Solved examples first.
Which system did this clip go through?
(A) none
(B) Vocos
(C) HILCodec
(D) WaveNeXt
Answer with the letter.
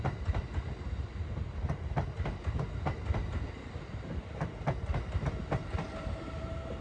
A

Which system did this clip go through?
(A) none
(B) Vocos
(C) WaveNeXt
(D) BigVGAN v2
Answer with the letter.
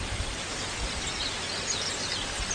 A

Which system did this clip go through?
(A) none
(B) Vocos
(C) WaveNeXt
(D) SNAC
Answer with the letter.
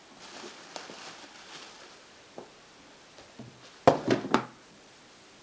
A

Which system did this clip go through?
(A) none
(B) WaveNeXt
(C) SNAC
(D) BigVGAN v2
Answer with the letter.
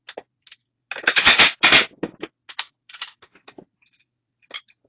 A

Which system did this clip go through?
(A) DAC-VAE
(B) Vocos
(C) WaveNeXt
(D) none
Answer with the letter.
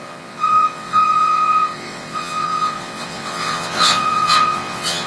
C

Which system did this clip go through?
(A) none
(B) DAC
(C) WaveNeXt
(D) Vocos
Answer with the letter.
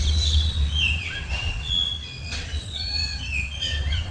C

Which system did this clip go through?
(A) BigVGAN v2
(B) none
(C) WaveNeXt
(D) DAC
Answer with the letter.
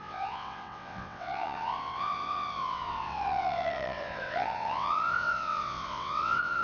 C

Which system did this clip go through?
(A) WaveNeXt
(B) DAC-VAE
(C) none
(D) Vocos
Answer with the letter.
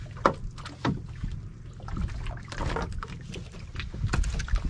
C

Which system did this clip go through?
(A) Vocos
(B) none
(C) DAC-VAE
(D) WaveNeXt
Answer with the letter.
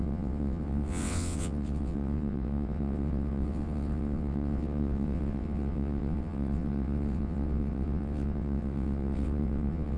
D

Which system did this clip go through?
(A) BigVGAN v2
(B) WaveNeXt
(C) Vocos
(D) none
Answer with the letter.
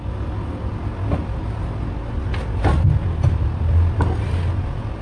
D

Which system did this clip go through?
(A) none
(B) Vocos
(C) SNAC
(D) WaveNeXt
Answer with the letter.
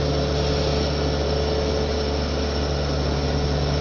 A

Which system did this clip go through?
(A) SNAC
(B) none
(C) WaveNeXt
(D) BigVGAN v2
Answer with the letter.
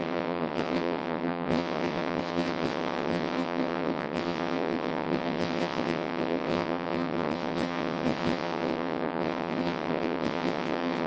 C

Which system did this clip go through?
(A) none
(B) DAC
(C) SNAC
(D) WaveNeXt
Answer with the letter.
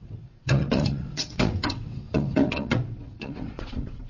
D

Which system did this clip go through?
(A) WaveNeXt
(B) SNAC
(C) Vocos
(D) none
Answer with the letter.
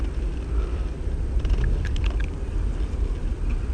D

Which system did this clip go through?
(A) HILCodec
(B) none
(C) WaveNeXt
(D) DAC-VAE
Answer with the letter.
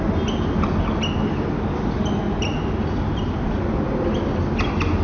B